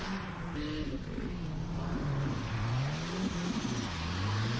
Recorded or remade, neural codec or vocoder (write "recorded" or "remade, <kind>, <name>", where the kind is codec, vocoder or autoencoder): recorded